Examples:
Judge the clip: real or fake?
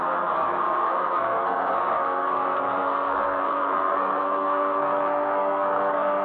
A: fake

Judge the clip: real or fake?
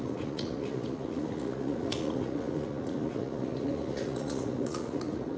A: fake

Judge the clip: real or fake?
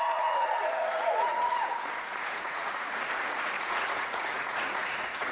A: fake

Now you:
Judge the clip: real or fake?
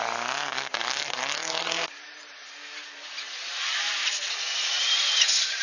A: real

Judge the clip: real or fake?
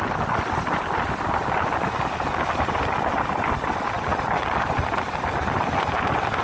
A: real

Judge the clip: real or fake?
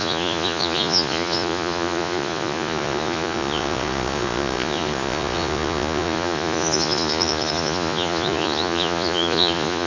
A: fake